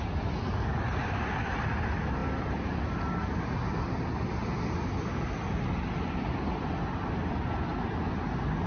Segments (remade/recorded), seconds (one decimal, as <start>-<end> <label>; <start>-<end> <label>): 0.0-8.7 recorded